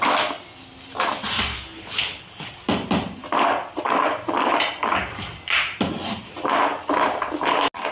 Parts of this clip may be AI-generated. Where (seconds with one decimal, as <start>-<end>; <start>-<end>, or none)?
1.5-2.5